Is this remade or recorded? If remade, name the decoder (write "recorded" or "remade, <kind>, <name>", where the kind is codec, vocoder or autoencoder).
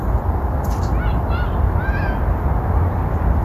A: recorded